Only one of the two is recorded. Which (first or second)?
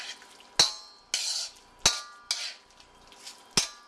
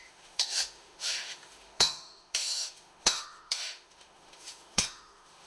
first